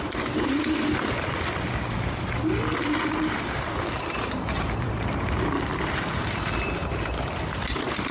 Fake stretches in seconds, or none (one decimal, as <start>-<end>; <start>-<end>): 0.0-8.1